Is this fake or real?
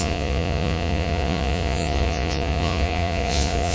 fake